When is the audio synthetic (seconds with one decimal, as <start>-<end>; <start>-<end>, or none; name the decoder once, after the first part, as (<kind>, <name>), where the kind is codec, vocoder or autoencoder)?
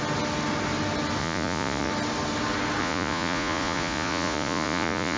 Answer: 1.2-1.9 (vocoder, Vocos); 2.8-5.2